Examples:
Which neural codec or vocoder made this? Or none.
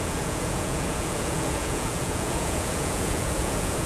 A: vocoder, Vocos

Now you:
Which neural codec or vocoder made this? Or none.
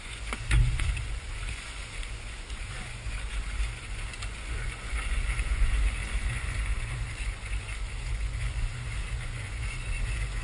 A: vocoder, Vocos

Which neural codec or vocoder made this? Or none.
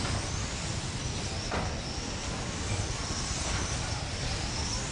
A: none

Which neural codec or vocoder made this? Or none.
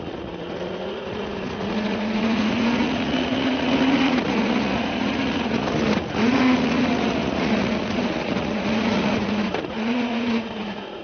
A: vocoder, Vocos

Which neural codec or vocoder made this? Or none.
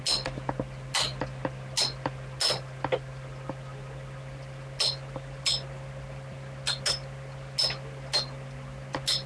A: none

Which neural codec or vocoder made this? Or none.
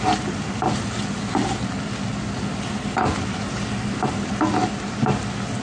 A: none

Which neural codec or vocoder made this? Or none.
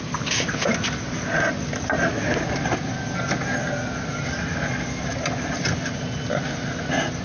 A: none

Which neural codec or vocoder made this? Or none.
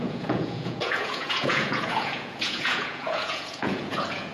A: vocoder, Vocos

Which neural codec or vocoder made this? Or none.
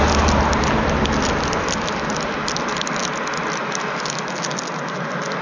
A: none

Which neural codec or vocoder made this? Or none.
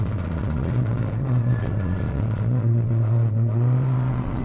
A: vocoder, Vocos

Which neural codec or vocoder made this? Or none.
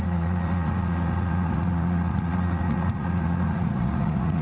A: vocoder, Vocos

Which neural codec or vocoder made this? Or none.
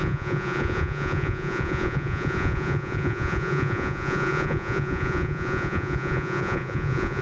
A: vocoder, Vocos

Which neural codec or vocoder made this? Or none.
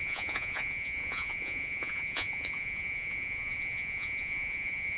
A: vocoder, Vocos